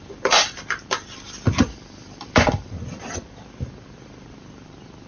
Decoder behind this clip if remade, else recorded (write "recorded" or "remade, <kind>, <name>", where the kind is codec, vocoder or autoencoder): remade, vocoder, BigVGAN v2